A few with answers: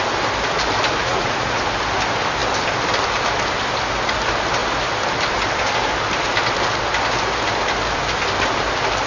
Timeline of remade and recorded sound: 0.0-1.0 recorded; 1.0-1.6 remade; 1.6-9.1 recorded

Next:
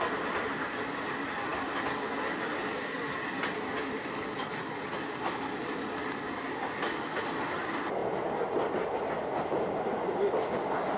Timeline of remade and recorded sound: 0.0-11.0 recorded

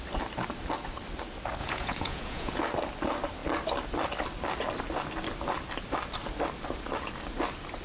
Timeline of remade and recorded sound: 0.0-1.6 recorded; 1.6-2.6 remade; 2.6-7.8 recorded

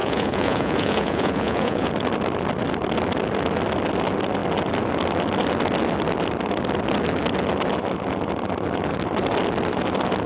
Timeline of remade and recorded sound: 0.0-1.9 remade; 1.9-10.3 recorded

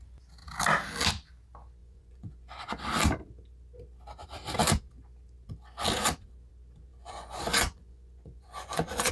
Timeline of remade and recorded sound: 0.0-1.8 recorded; 1.8-2.8 remade; 2.8-6.9 recorded; 6.9-9.1 remade

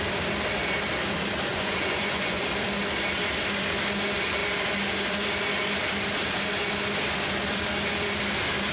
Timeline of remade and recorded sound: 0.0-1.5 recorded; 1.5-2.4 remade; 2.4-8.7 recorded

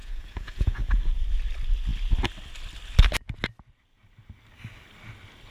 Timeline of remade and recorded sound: 0.0-1.0 remade; 1.0-5.5 recorded